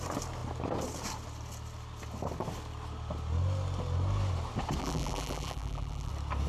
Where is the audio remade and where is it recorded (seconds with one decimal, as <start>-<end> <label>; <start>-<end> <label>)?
0.0-4.8 recorded; 4.8-6.1 remade; 6.1-6.5 recorded